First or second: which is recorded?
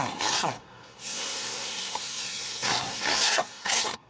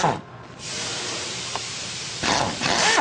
second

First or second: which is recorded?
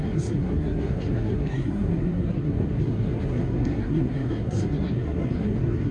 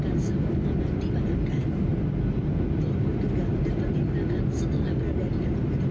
second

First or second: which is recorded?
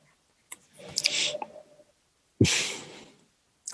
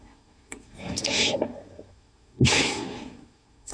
first